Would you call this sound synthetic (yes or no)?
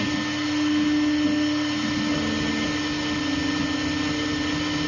no